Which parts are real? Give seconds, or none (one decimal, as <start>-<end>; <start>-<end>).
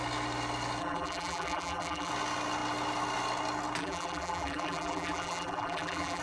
0.0-0.8; 2.1-3.8